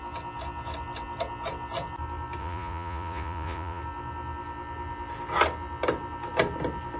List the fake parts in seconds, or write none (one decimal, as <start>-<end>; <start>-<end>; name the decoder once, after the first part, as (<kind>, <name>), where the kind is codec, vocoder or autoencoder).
2.4-3.8 (vocoder, Vocos)